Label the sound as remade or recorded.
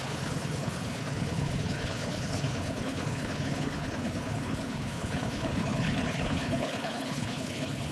remade